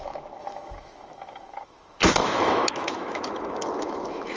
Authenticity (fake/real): fake